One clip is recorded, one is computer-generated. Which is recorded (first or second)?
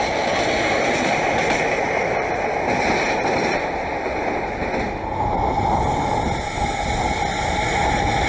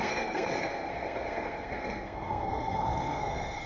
first